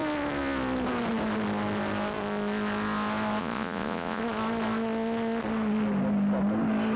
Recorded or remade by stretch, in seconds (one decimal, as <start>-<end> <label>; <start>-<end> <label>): 0.0-3.4 recorded; 3.4-4.2 remade; 4.2-7.0 recorded